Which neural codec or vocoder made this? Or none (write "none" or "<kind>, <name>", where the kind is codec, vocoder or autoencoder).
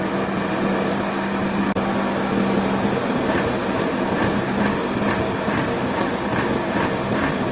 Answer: none